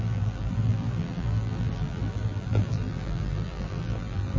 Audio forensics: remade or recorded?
remade